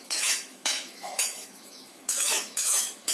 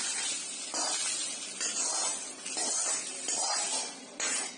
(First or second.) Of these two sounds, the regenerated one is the first